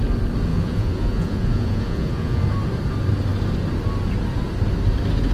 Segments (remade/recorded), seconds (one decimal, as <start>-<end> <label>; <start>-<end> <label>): 0.0-0.5 recorded; 0.5-2.4 remade; 2.4-5.3 recorded